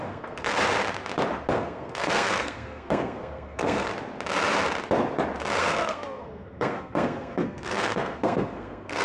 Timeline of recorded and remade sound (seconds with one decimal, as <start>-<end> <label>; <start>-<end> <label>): 0.0-0.5 remade; 0.5-1.5 recorded; 1.5-3.9 remade; 3.9-5.6 recorded; 5.6-9.0 remade